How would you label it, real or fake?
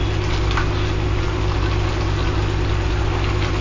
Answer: real